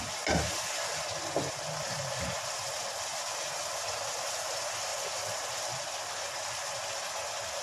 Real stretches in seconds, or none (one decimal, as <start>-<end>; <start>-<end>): 0.0-7.6